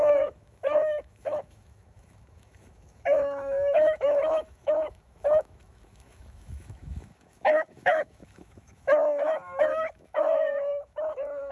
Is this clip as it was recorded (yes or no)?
no